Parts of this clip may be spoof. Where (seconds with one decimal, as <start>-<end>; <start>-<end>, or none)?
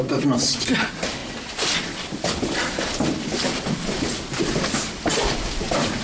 0.0-1.2; 1.8-5.1; 5.6-6.0